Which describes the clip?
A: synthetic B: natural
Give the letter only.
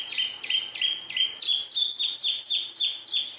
B